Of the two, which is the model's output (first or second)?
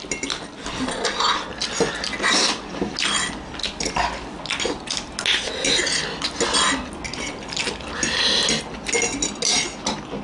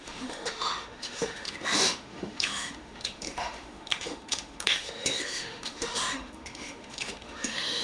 second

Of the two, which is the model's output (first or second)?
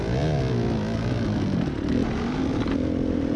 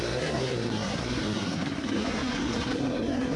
second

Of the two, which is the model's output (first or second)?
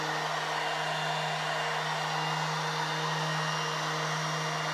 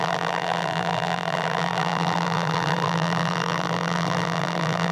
second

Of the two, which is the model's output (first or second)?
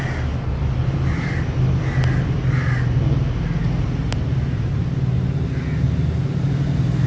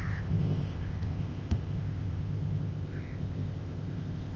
second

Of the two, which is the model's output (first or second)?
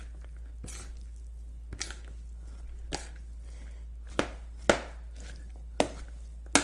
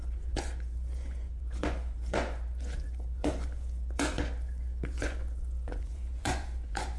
second